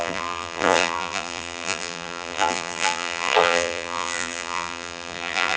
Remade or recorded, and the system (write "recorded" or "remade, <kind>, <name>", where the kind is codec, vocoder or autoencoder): remade, vocoder, BigVGAN v2